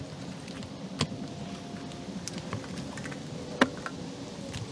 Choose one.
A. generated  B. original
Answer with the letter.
B